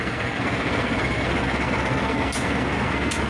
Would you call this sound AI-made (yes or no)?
yes